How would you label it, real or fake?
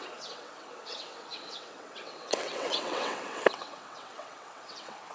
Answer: fake